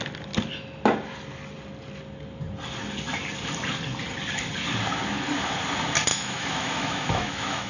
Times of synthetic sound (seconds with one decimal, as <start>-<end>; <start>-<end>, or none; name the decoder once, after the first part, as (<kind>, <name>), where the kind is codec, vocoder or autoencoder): 6.1-7.7 (autoencoder, DAC-VAE)